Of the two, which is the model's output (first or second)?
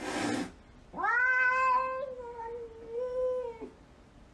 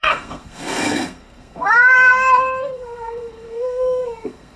second